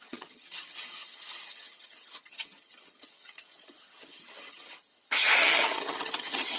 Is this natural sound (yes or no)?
no